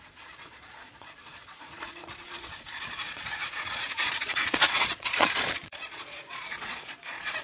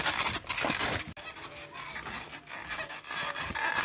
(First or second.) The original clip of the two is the second